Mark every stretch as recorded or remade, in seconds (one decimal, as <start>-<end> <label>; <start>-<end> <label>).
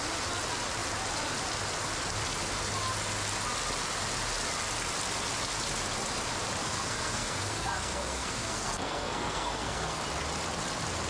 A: 0.0-6.6 recorded; 6.6-10.0 remade; 10.0-11.1 recorded